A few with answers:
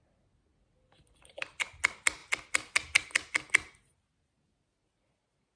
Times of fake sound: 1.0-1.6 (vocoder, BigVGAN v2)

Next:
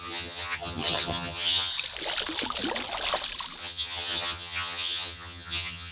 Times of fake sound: 0.0-1.7 (vocoder, HiFi-GAN); 3.6-5.9

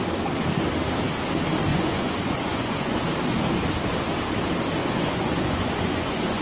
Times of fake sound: 1.7-3.0 (vocoder, Vocos); 4.8-6.4

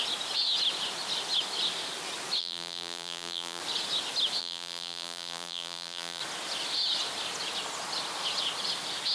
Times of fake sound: 2.4-3.6 (vocoder, BigVGAN v2); 4.4-6.2

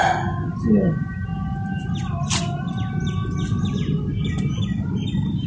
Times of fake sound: none

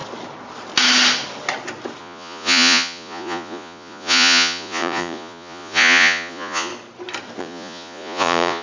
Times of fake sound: 2.0-6.7 (vocoder, Vocos); 7.4-8.6

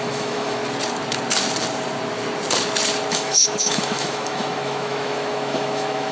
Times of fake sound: 0.0-0.6 (autoencoder, DAC-VAE); 3.1-6.1

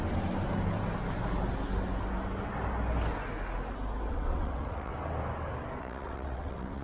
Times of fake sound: 4.1-4.9 (vocoder, WaveNeXt); 5.8-6.8